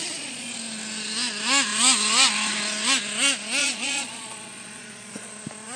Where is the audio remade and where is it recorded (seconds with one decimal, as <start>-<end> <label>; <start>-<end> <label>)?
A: 0.0-0.5 remade; 0.5-3.6 recorded; 3.6-5.3 remade; 5.3-5.8 recorded